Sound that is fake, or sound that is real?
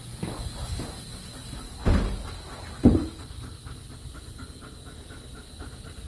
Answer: real